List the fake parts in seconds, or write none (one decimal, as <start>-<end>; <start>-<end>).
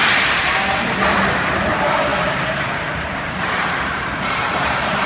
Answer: 0.7-5.1